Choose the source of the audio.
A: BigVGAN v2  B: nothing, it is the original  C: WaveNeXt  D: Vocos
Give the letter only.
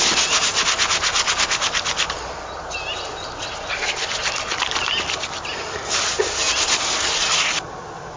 B